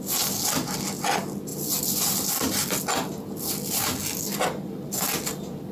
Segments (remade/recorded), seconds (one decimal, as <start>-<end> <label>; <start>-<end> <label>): 0.0-5.7 recorded